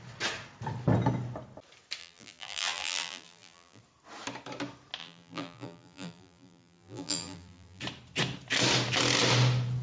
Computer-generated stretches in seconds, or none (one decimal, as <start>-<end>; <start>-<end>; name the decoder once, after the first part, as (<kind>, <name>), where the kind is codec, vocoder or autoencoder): 2.0-3.8 (vocoder, BigVGAN v2); 5.0-7.8